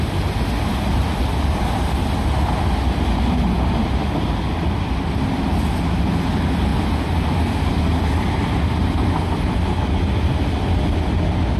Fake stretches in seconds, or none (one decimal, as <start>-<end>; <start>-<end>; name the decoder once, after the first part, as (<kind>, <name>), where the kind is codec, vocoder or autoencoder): none